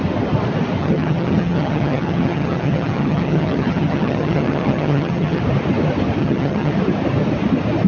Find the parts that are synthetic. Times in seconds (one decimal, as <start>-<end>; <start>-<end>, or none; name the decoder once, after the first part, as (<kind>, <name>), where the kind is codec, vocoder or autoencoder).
0.8-5.4 (vocoder, HiFi-GAN); 6.2-6.7